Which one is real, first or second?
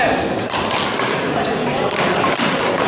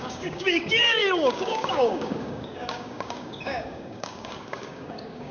first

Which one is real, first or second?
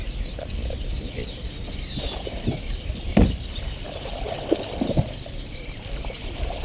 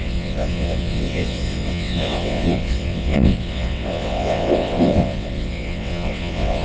first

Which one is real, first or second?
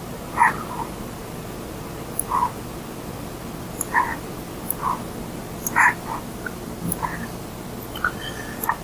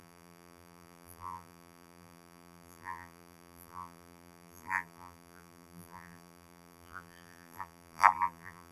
first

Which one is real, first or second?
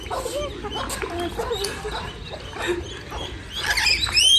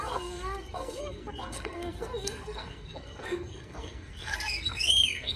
first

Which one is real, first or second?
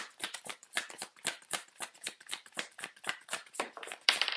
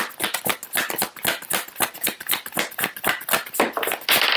second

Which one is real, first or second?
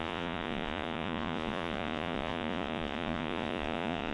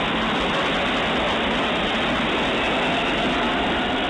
second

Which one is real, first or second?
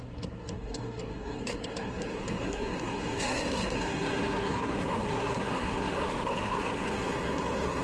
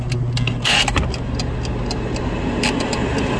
second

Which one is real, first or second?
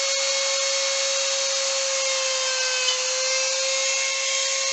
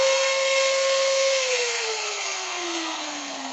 first